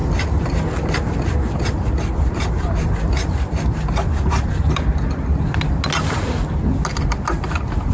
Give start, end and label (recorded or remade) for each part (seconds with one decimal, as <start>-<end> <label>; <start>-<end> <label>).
0.0-7.9 recorded